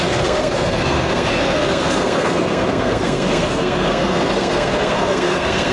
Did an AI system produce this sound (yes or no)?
yes